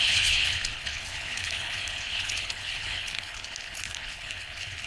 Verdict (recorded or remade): remade